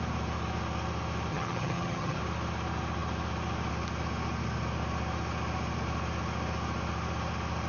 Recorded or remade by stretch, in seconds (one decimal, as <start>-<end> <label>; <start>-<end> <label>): 0.0-1.3 recorded; 1.3-2.2 remade; 2.2-7.7 recorded